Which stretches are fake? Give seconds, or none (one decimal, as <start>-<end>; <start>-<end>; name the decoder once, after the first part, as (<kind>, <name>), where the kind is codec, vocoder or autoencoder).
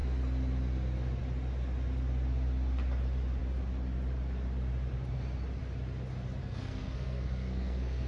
6.4-8.1 (codec, SNAC)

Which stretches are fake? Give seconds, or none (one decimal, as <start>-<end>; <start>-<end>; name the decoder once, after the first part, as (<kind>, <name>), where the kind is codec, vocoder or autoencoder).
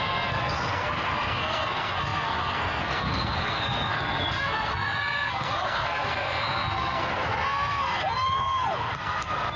0.0-9.6 (codec, SNAC)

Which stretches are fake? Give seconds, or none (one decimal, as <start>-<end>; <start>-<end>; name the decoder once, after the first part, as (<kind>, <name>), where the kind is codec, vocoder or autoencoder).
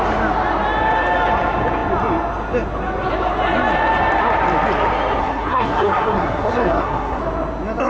5.2-7.2 (codec, SNAC)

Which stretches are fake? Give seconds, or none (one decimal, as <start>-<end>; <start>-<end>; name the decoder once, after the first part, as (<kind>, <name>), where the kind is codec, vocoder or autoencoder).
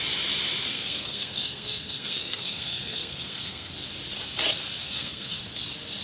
0.7-3.7 (codec, SNAC); 4.8-5.4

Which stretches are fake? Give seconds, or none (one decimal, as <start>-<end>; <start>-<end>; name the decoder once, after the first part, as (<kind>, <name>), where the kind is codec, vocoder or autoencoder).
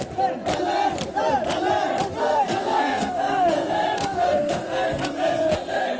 2.2-6.0 (codec, SNAC)